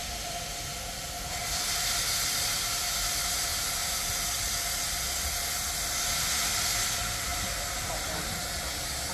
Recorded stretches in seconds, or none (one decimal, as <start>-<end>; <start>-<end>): 0.0-3.5; 4.1-9.1